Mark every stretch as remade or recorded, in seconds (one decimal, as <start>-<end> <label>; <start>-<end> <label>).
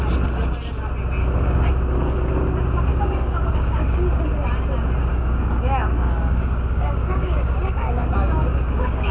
0.0-1.2 recorded; 1.2-1.7 remade; 1.7-2.9 recorded; 2.9-4.3 remade; 4.3-5.1 recorded; 5.1-9.1 remade